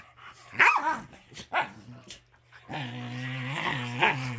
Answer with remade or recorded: recorded